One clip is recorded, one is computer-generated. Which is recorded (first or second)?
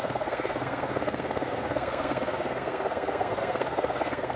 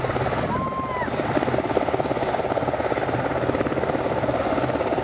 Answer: second